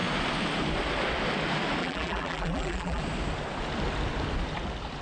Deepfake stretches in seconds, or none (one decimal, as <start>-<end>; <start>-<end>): 1.8-3.0